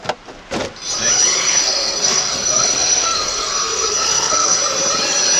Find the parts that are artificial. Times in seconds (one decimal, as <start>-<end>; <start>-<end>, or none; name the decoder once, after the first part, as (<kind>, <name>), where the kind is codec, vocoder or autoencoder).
1.4-4.6 (codec, SNAC)